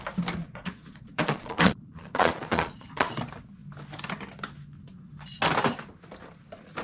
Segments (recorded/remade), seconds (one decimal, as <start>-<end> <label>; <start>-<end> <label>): 0.0-0.4 recorded; 0.4-3.2 remade; 3.2-6.8 recorded